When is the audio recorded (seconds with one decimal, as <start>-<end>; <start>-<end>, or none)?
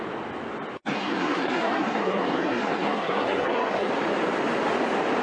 0.0-0.8; 3.9-5.2